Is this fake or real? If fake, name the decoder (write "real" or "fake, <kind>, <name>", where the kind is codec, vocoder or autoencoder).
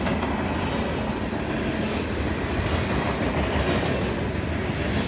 real